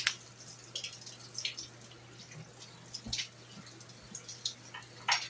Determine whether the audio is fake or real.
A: real